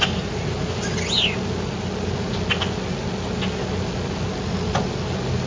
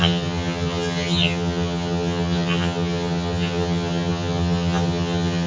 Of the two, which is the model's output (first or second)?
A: second